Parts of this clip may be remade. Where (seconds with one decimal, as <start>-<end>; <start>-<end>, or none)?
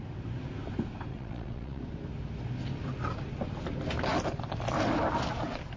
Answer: 1.1-1.8